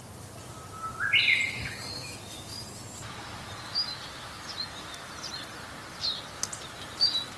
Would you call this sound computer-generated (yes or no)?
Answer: no